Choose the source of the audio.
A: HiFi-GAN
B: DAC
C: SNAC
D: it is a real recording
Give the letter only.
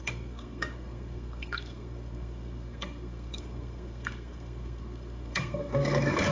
C